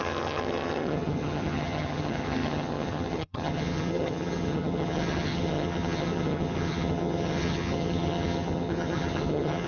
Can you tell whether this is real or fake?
fake